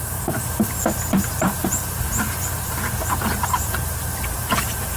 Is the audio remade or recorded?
remade